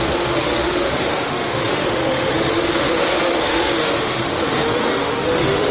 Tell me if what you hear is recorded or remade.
remade